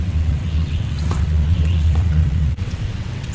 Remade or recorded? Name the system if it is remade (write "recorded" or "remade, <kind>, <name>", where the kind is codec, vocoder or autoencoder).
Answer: remade, vocoder, WaveNeXt